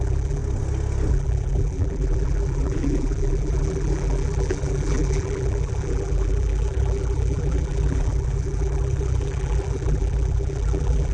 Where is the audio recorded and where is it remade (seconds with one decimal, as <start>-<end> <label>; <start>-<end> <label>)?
0.0-0.4 remade; 0.4-1.1 recorded; 1.1-11.1 remade

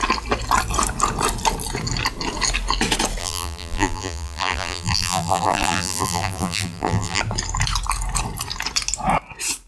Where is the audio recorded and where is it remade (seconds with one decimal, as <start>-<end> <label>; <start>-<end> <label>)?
0.0-3.2 recorded; 3.2-7.2 remade; 7.2-9.7 recorded

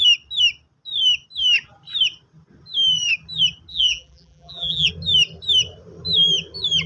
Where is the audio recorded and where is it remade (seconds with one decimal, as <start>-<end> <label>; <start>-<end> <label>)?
0.0-3.7 recorded; 3.7-4.9 remade; 4.9-6.9 recorded